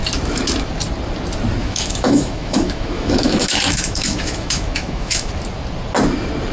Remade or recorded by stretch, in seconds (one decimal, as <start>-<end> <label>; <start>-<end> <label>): 0.0-1.6 recorded; 1.6-5.3 remade; 5.3-6.5 recorded